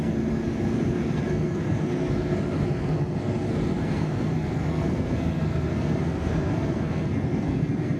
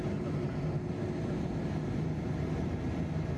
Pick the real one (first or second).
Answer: second